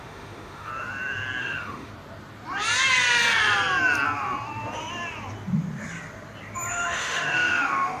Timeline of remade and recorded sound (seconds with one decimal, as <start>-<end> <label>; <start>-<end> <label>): 0.0-0.7 remade; 0.7-1.4 recorded; 1.4-1.9 remade; 1.9-6.7 recorded; 6.7-8.0 remade